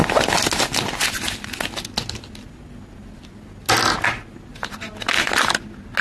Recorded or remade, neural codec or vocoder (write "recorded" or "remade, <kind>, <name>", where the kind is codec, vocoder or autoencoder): recorded